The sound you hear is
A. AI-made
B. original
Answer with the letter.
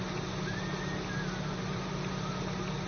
B